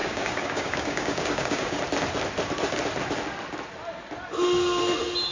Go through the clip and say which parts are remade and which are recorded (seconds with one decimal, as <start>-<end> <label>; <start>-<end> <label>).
0.0-1.8 remade; 1.8-5.3 recorded